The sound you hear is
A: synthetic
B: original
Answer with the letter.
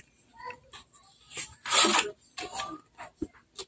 B